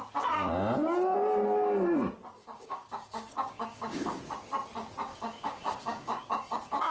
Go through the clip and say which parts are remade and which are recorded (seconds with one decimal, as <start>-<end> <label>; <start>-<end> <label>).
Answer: 0.0-2.4 recorded; 2.4-4.2 remade; 4.2-5.1 recorded; 5.1-6.9 remade